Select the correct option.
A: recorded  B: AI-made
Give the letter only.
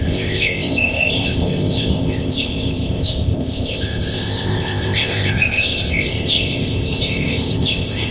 B